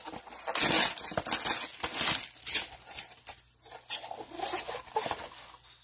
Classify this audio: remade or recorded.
recorded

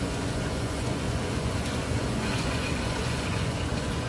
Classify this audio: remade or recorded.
remade